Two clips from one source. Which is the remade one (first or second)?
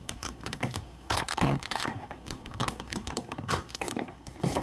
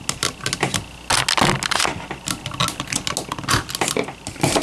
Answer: first